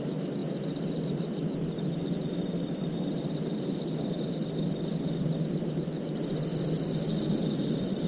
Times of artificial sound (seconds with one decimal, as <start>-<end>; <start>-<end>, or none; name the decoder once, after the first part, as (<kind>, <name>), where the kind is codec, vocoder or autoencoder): none